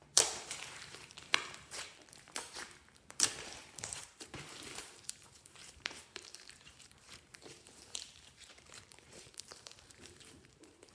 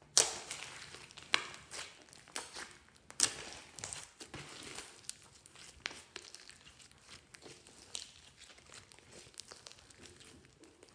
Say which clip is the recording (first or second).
second